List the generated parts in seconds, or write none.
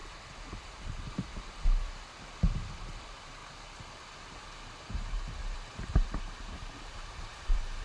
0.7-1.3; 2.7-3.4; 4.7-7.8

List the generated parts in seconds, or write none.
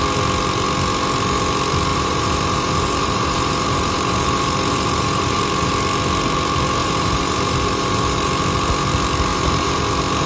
1.9-5.7; 6.8-8.3; 9.3-9.8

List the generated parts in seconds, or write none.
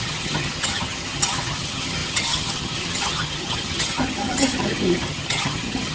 0.0-5.9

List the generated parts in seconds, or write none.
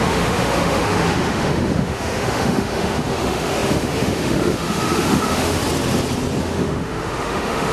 0.0-5.6; 6.4-7.7